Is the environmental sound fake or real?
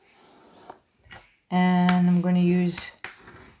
real